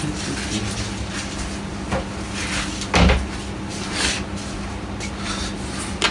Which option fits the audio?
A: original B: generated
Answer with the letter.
A